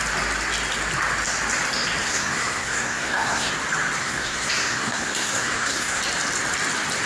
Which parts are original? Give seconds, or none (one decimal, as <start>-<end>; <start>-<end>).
0.0-2.0; 3.5-4.0; 6.0-7.1